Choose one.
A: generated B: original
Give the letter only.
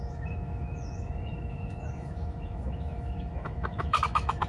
A